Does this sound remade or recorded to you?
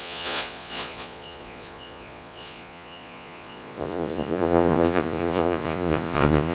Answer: remade